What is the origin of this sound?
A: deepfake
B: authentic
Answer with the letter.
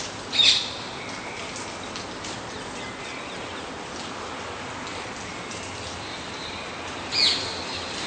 B